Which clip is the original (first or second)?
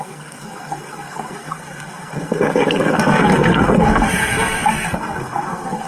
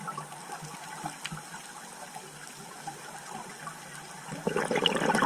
second